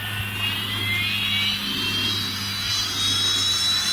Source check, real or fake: real